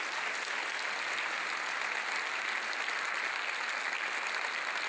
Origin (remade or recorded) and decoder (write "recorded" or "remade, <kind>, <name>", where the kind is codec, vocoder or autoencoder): recorded